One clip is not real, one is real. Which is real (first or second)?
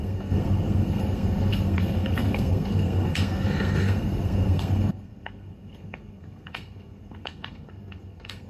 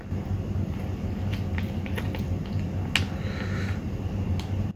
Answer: second